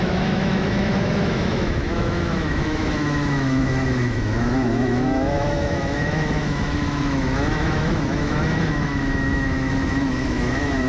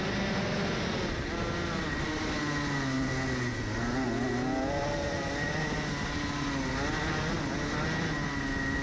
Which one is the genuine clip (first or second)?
second